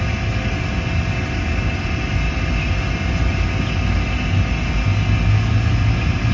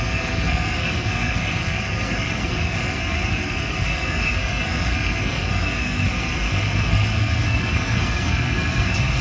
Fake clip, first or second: second